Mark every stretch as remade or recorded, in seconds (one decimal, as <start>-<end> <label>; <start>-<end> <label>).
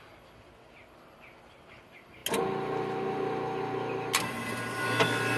0.0-5.4 recorded